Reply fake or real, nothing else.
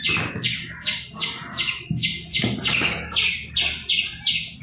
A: real